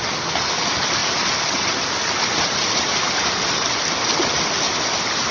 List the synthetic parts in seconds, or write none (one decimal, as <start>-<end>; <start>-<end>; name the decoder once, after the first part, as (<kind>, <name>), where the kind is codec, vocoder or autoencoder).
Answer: none